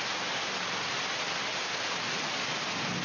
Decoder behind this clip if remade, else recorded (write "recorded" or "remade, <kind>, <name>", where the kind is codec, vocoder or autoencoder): recorded